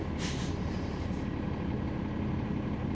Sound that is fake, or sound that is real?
real